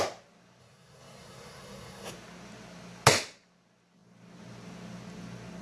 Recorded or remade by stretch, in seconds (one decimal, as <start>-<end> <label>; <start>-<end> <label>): 0.0-0.6 recorded; 0.6-2.1 remade; 2.1-5.6 recorded